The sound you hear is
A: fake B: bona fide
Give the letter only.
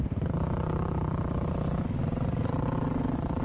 B